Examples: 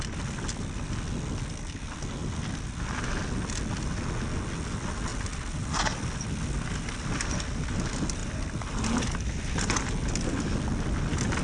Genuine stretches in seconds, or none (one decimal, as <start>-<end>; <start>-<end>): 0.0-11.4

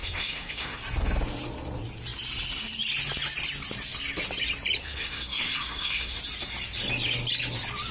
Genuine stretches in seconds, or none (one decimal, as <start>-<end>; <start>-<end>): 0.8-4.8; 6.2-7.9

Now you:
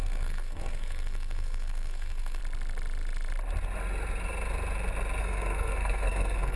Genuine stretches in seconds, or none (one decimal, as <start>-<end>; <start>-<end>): 2.4-5.2

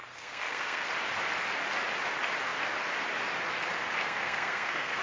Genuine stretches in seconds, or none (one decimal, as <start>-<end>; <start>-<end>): 0.9-4.0